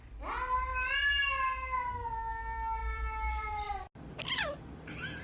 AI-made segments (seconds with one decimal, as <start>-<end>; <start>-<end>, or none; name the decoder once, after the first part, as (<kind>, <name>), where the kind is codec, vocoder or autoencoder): 2.8-3.8 (vocoder, BigVGAN v2)